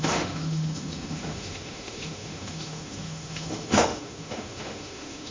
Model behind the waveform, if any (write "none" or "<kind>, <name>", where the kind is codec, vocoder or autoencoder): autoencoder, DAC-VAE